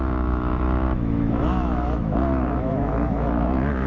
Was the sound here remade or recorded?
remade